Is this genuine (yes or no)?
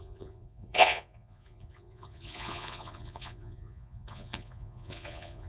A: no